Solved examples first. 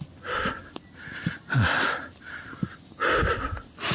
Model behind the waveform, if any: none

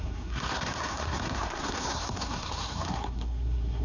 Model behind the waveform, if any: codec, SNAC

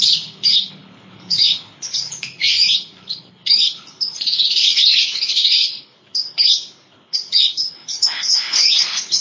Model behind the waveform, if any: codec, HILCodec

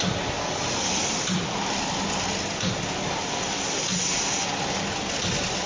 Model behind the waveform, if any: none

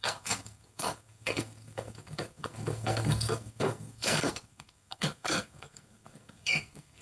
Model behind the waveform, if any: codec, SNAC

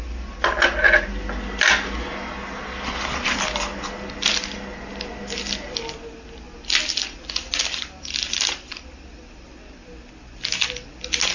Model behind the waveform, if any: none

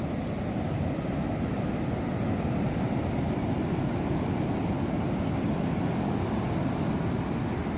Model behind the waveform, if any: none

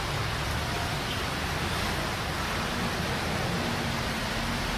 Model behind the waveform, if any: none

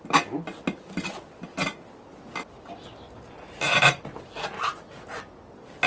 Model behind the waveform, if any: none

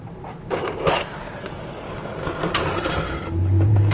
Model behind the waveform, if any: vocoder, BigVGAN v2